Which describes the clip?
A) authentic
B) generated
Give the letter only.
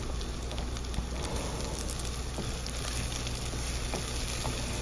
A